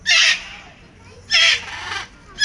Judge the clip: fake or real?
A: real